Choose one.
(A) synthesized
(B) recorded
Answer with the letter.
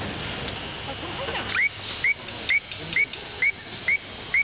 B